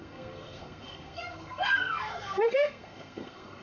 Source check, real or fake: fake